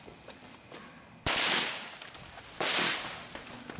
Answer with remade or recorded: recorded